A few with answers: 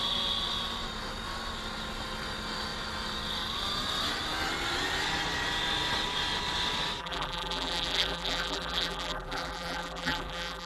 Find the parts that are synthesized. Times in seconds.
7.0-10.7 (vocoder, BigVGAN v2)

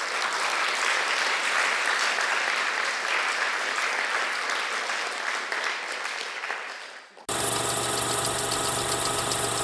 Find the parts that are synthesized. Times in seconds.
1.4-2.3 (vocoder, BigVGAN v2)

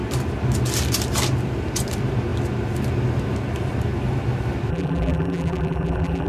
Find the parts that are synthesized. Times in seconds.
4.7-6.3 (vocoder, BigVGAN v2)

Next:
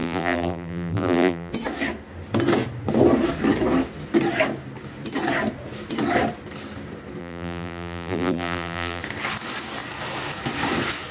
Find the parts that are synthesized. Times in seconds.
0.0-1.5 (vocoder, BigVGAN v2); 7.2-9.0

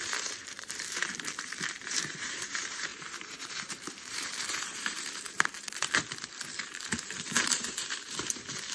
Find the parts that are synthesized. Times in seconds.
0.0-6.0 (vocoder, BigVGAN v2); 6.6-8.7

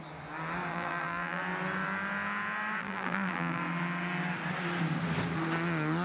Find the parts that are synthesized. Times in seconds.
0.7-1.4 (vocoder, BigVGAN v2); 2.8-3.6